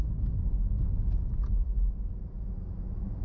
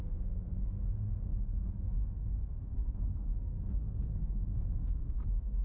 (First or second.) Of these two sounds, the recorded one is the first